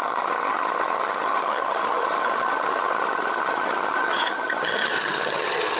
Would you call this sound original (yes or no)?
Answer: no